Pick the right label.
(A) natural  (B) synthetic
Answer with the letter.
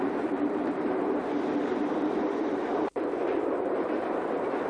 B